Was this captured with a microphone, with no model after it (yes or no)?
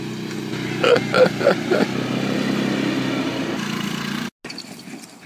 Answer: yes